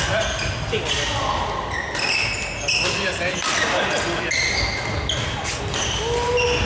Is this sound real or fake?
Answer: real